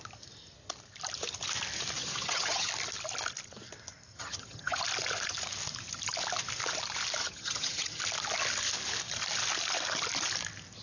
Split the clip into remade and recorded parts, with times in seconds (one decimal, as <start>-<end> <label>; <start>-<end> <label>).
0.0-2.0 recorded; 2.0-2.7 remade; 2.7-4.1 recorded; 4.1-4.8 remade; 4.8-7.2 recorded; 7.2-8.0 remade; 8.0-10.8 recorded